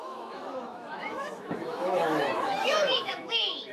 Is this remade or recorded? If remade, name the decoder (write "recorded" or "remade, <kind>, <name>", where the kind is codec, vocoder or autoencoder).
remade, autoencoder, DAC-VAE